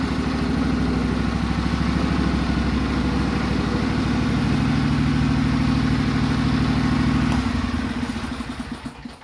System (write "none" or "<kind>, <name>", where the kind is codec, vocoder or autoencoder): none